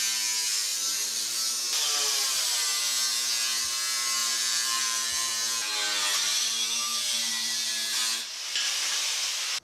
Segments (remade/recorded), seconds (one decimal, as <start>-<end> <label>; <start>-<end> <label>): 0.0-4.2 recorded; 4.2-5.3 remade; 5.3-6.9 recorded; 6.9-7.7 remade; 7.7-9.6 recorded